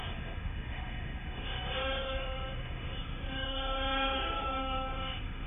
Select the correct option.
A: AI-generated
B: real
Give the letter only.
A